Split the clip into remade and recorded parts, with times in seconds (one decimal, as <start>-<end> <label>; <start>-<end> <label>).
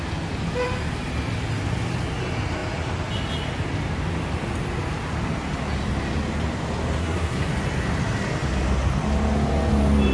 0.0-7.0 recorded; 7.0-7.5 remade; 7.5-10.1 recorded